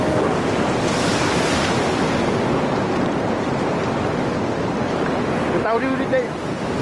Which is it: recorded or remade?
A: recorded